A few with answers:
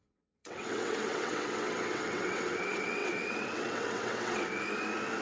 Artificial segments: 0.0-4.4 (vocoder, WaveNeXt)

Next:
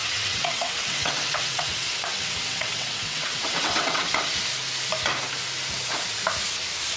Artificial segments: 0.0-4.1 (vocoder, WaveNeXt)

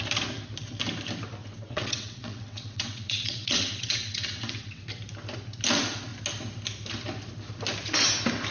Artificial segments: 1.4-4.8 (vocoder, WaveNeXt)